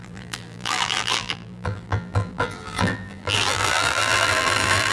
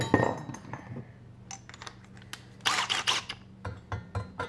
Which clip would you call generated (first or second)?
first